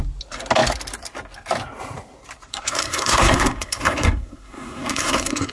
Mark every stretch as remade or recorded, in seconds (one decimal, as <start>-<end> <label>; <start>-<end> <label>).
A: 0.0-2.5 recorded; 2.5-5.5 remade